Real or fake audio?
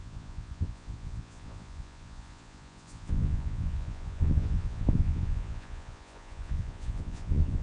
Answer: fake